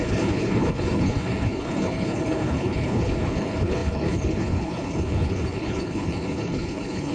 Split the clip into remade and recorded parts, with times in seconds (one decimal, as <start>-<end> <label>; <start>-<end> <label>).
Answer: 0.0-7.1 remade